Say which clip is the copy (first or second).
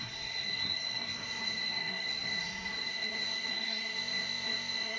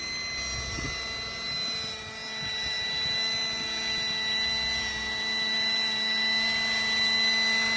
first